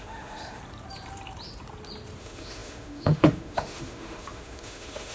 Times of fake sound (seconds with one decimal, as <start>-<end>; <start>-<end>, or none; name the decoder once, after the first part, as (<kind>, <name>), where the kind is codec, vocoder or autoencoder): 0.0-0.6 (autoencoder, DAC-VAE); 2.2-5.1

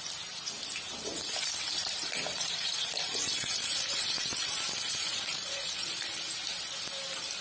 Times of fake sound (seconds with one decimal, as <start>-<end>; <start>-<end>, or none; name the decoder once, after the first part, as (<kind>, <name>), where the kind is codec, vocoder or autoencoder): 2.3-6.0 (vocoder, Vocos)

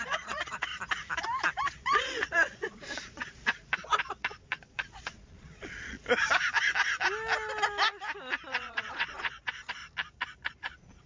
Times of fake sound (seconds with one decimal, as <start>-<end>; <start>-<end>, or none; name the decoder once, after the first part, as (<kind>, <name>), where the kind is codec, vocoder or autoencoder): 0.0-0.7 (vocoder, Vocos); 1.6-6.0; 8.5-9.8; 10.5-11.1

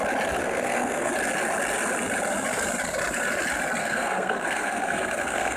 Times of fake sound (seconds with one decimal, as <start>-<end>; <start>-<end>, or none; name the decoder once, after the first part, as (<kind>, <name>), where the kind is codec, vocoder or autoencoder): 0.4-1.1 (codec, SNAC); 3.8-5.6

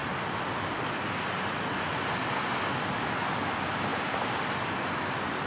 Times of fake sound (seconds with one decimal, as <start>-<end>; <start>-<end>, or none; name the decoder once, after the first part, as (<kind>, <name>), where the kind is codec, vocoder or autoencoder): none